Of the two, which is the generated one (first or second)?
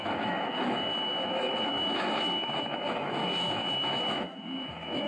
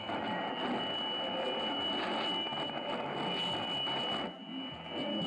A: first